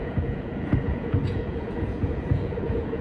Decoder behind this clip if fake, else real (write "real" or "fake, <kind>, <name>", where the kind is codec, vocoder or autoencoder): fake, vocoder, Vocos